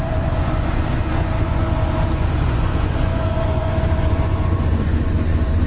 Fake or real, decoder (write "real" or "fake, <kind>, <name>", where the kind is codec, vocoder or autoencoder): fake, vocoder, Vocos